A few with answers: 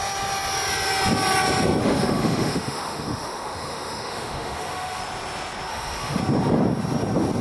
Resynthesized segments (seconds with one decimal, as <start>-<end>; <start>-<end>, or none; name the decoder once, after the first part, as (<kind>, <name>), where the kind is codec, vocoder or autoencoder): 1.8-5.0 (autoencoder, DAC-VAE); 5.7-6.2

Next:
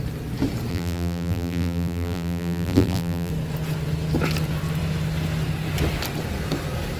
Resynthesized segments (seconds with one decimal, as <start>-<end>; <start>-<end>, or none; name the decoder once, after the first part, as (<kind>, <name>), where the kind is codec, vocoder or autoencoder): 0.7-3.3 (vocoder, BigVGAN v2)

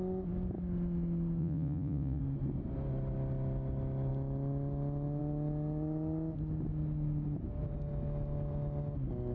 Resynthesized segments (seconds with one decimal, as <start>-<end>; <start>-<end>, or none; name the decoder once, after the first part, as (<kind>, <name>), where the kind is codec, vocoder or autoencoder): 1.4-2.2 (vocoder, Vocos)

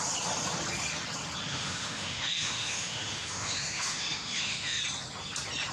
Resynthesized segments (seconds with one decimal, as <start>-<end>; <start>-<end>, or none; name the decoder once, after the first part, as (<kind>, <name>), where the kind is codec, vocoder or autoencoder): 1.5-4.8 (autoencoder, DAC-VAE)

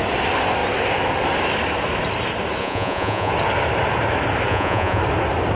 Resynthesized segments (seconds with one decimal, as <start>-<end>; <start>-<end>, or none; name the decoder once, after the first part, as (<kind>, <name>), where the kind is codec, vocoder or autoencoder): 2.6-3.3 (vocoder, Vocos); 4.5-5.0

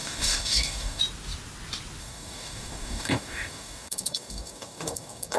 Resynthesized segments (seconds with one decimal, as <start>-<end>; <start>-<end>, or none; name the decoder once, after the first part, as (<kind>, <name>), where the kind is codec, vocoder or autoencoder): 0.0-1.0 (codec, DAC); 2.0-5.4